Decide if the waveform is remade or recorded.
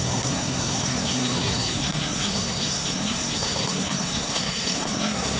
remade